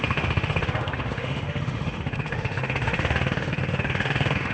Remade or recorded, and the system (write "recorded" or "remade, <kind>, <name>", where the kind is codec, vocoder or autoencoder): remade, autoencoder, DAC-VAE